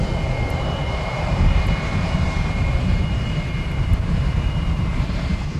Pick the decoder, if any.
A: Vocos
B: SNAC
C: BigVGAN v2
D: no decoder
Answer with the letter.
C